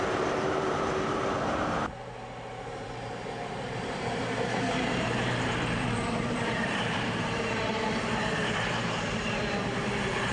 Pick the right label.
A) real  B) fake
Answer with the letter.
B